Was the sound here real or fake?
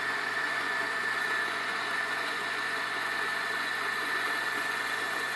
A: fake